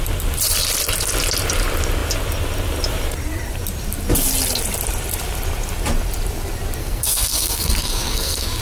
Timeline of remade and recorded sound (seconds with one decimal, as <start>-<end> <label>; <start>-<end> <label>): 0.0-6.8 recorded; 6.8-8.6 remade